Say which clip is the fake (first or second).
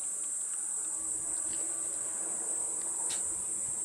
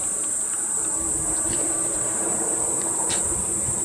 second